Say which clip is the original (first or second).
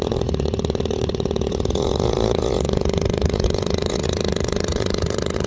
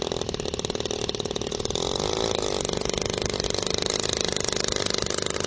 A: second